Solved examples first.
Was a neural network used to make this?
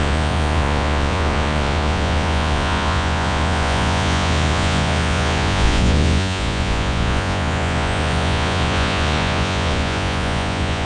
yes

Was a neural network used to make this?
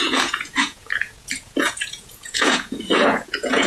yes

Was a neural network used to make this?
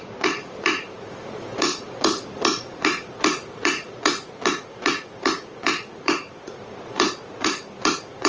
yes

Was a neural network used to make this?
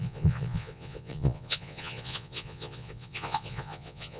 yes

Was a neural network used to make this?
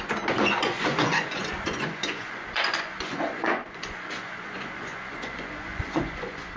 yes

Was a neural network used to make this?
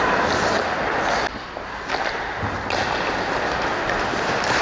no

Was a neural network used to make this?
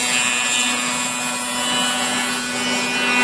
no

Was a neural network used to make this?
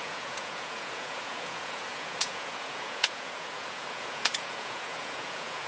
yes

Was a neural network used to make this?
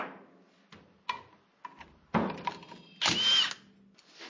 no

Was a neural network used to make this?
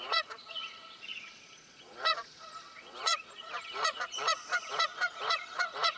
yes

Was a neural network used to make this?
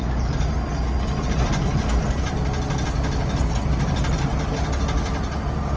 no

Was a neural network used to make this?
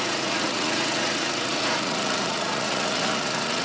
yes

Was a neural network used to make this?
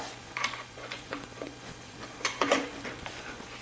yes